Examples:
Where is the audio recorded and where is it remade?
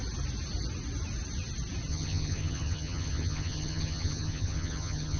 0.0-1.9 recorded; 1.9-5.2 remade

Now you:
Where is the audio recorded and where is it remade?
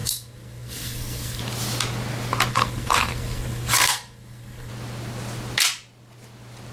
0.0-1.4 remade; 1.4-2.5 recorded; 2.5-4.7 remade; 4.7-6.7 recorded